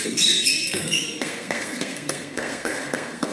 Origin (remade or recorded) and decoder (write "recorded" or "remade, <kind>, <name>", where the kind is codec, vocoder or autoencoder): remade, codec, SNAC